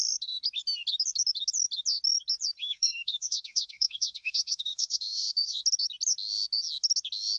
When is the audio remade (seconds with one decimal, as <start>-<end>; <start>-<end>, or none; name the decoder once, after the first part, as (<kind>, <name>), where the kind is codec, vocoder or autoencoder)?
2.6-5.6 (autoencoder, DAC-VAE)